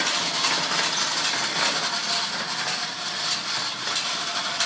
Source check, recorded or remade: recorded